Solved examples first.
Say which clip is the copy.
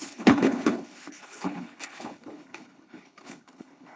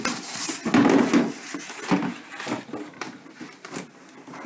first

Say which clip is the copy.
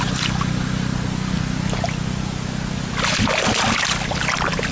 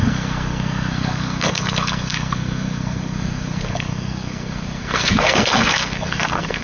second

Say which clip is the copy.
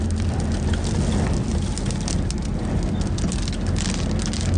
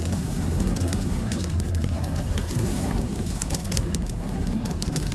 second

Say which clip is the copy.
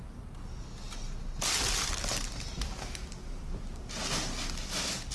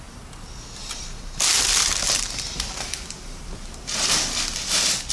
second